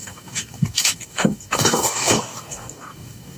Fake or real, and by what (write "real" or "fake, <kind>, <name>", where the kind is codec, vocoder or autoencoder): fake, codec, DAC